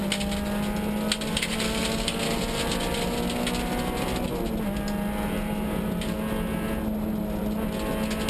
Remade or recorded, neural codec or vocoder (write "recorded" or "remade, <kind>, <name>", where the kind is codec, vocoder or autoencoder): recorded